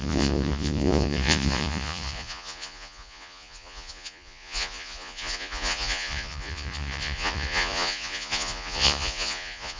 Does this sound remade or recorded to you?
remade